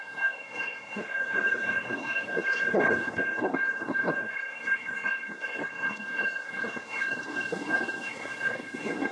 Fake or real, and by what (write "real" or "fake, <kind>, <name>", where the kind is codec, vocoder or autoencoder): fake, codec, SNAC